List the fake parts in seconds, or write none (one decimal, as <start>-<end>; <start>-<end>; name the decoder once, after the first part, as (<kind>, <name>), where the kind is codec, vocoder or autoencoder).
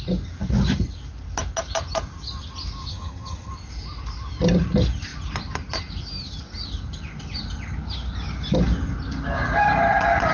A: 2.9-3.5 (vocoder, HiFi-GAN)